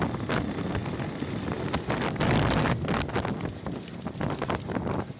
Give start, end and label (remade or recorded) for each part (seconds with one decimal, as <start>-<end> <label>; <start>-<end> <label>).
0.0-5.2 recorded